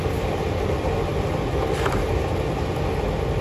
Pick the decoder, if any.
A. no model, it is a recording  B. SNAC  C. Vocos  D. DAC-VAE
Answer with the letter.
A